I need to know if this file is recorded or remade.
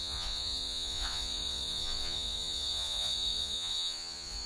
remade